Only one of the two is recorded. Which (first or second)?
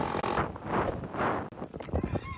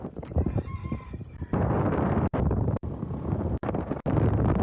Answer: first